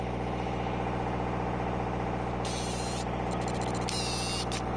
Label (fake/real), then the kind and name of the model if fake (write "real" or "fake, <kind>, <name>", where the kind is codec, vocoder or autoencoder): real